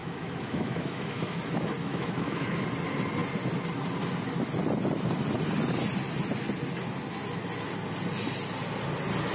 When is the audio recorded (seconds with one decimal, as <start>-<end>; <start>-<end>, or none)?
1.4-1.8; 2.6-9.3